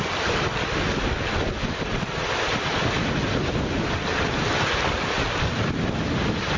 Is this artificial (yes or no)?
no